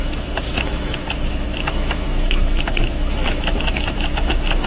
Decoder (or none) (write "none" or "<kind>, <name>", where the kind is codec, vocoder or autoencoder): autoencoder, DAC-VAE